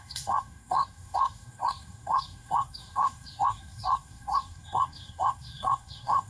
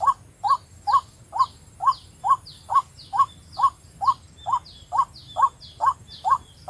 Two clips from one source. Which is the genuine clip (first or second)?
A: second